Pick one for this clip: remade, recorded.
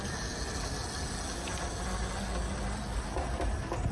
recorded